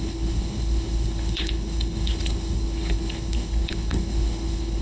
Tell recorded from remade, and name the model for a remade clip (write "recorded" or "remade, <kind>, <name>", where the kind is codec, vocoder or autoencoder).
remade, codec, HILCodec